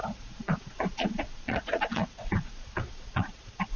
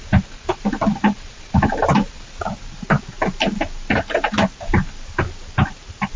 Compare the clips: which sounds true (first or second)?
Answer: second